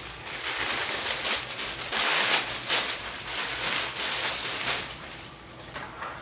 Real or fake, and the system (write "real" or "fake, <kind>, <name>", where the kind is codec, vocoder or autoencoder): real